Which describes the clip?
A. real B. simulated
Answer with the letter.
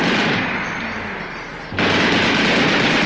A